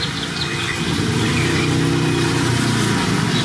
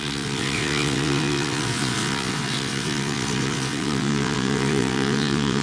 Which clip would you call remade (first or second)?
second